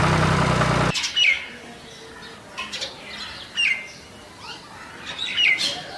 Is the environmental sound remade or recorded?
recorded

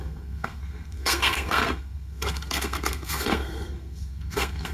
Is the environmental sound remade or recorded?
remade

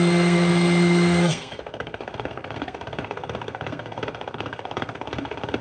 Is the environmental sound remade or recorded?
remade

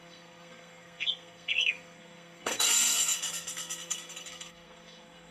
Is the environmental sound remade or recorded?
remade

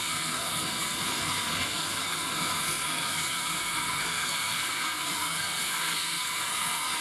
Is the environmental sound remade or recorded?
remade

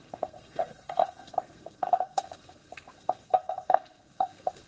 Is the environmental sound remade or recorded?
remade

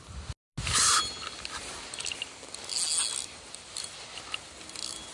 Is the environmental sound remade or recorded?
recorded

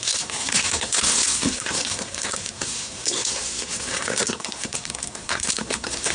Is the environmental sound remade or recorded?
remade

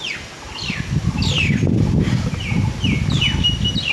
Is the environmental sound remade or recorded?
recorded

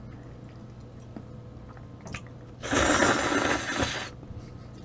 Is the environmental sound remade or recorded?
recorded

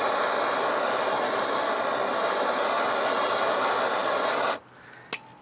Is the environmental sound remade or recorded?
recorded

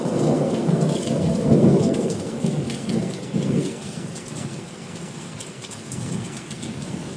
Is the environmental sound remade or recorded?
remade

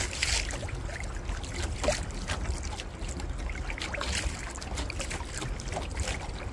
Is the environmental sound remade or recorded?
recorded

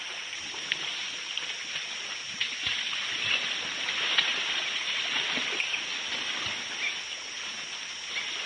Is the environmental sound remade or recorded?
recorded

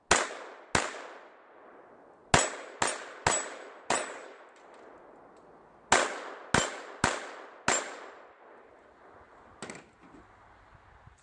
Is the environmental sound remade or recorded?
recorded